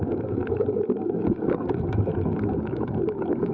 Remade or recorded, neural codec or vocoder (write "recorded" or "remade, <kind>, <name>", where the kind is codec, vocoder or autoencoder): remade, codec, DAC